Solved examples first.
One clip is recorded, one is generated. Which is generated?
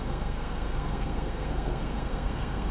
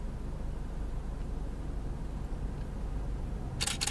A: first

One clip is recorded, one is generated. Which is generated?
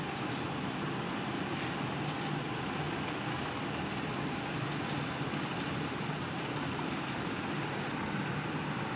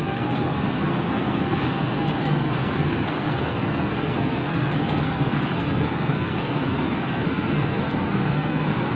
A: second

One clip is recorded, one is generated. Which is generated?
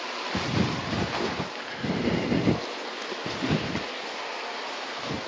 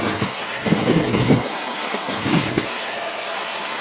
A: second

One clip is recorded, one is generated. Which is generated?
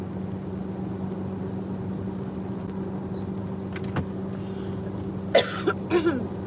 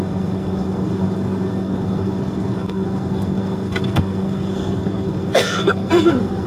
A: second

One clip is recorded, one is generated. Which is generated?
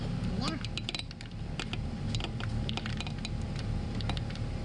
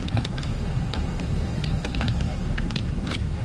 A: second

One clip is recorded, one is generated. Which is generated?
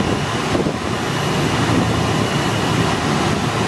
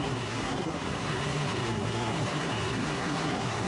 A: second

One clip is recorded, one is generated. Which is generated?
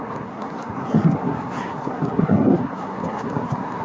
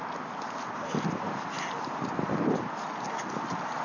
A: first